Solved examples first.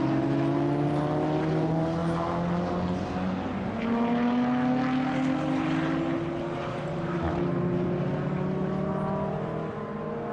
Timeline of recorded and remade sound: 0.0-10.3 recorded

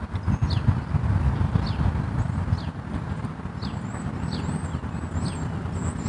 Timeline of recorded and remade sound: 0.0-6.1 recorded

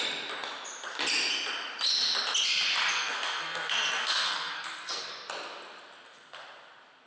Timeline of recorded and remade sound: 0.0-2.9 recorded; 2.9-5.1 remade; 5.1-7.1 recorded